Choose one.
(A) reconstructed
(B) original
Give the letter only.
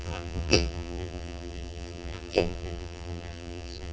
A